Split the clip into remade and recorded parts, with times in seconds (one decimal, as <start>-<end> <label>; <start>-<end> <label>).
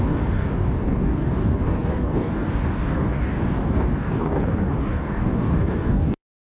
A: 0.0-6.4 remade